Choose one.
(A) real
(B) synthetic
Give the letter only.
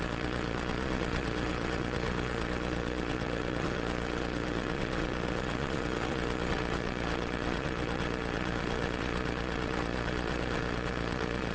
B